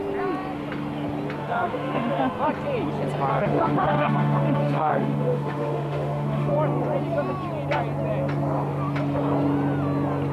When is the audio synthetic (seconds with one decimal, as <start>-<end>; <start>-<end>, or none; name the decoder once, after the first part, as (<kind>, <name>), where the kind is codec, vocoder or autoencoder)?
1.4-2.2 (autoencoder, DAC-VAE); 3.3-6.5